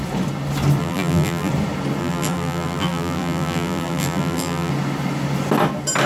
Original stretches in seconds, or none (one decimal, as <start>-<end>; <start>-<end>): 0.0-0.8; 1.5-2.0; 4.7-6.1